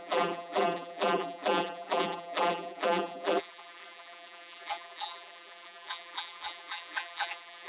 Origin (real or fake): fake